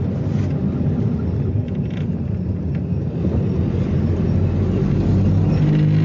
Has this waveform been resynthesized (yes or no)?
no